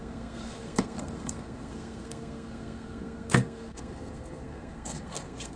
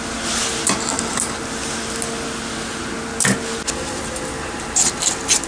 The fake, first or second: first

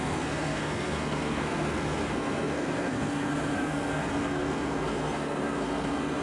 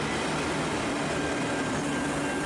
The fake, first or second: first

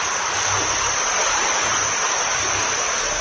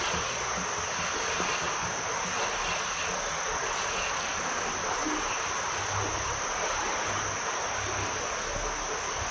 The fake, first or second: first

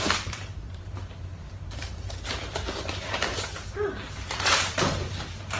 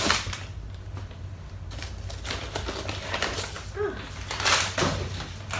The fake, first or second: first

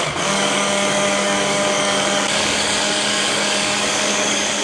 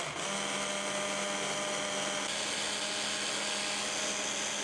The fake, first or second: first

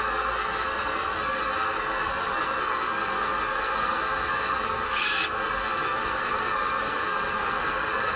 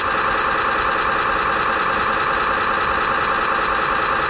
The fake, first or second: first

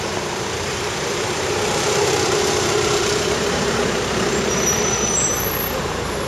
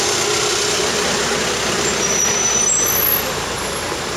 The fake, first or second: first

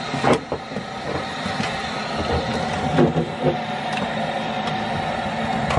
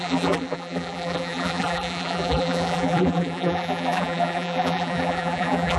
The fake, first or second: second